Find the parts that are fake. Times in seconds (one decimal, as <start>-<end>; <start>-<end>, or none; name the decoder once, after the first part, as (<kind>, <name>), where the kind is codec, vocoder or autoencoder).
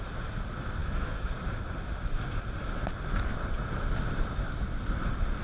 0.8-1.3 (autoencoder, DAC-VAE)